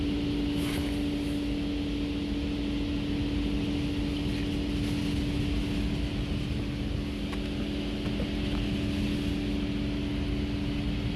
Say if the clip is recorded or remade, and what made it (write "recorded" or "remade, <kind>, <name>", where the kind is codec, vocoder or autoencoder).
recorded